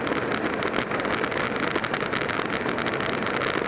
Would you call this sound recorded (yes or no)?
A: yes